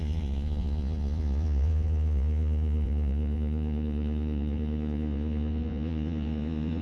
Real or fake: fake